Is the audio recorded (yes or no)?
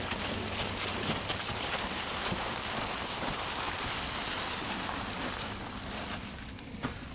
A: yes